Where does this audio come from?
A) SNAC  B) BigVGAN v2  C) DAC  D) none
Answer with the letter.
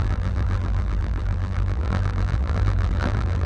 B